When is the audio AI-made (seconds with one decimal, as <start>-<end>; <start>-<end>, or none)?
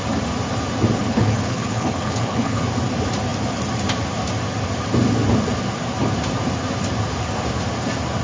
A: 1.0-2.6